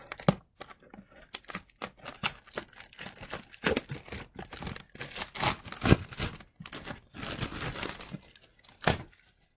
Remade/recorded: recorded